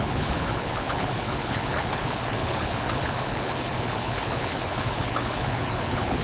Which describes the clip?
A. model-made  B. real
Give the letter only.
A